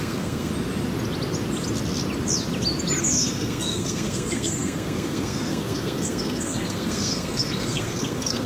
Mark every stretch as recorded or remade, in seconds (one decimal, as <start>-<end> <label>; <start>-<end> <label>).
0.0-0.5 remade; 0.5-3.0 recorded; 3.0-8.5 remade